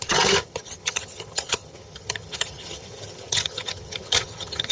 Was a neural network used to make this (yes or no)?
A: yes